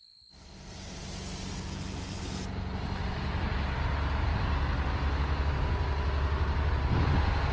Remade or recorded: recorded